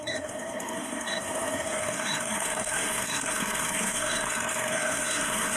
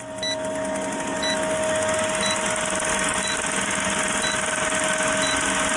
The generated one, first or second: first